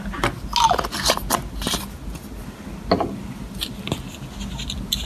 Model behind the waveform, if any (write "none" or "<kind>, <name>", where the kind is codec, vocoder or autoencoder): none